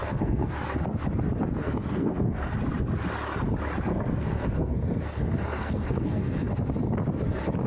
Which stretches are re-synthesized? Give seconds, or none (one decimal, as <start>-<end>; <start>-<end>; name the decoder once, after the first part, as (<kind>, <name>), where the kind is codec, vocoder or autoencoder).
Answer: 0.0-0.5 (codec, SNAC); 1.6-2.5; 3.9-6.5